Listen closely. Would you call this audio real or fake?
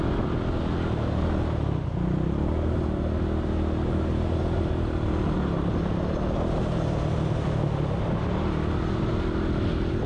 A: real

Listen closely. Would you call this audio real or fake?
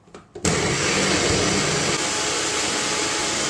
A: real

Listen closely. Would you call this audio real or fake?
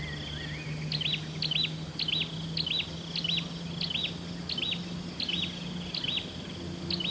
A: real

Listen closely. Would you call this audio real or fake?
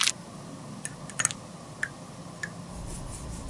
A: real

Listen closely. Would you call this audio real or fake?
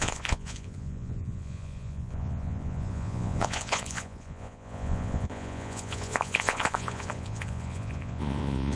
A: fake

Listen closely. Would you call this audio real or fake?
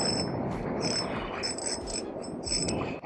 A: real